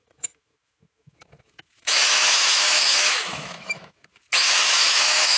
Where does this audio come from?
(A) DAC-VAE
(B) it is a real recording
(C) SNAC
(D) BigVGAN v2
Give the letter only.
A